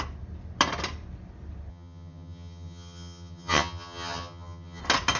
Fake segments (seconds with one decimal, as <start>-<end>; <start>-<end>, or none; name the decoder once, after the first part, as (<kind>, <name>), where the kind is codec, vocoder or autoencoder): 1.7-4.8 (vocoder, HiFi-GAN)